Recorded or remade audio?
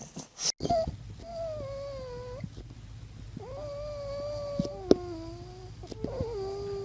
recorded